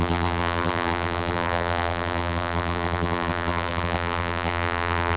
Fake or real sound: fake